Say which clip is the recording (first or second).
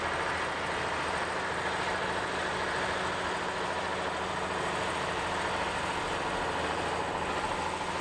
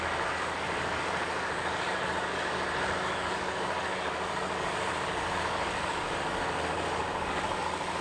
first